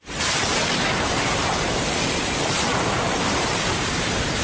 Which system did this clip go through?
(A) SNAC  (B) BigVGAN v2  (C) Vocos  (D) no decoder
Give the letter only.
B